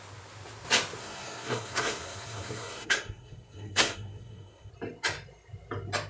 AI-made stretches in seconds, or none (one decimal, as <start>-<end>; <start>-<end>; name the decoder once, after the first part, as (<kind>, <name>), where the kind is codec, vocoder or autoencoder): 1.0-4.7 (codec, SNAC)